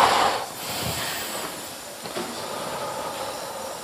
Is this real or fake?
real